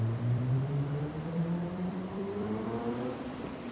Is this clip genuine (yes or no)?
no